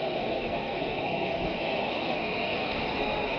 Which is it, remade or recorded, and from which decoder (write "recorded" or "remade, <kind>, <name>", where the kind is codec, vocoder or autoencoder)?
remade, codec, SNAC